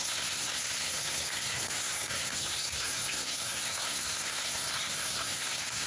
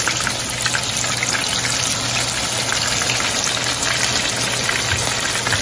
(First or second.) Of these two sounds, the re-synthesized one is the first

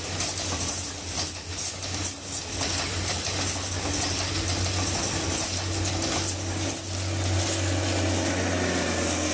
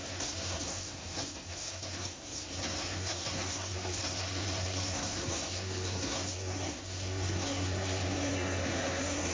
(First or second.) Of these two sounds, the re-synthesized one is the second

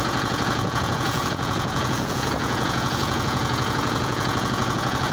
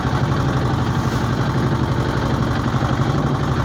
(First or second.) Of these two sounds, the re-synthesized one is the first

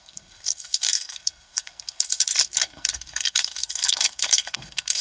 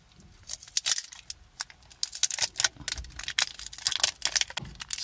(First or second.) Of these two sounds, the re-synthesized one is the first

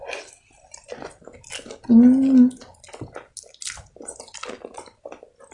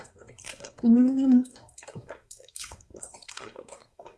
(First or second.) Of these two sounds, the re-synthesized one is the second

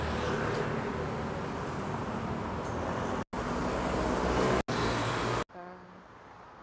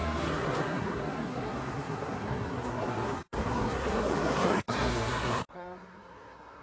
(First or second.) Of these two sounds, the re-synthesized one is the second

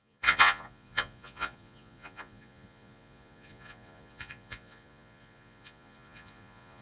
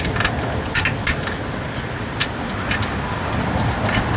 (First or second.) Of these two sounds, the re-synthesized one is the first